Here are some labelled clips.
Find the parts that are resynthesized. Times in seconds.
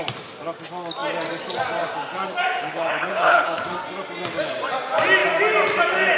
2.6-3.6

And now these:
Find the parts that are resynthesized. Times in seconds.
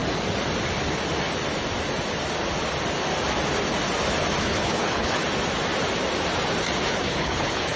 4.4-5.2; 6.9-7.8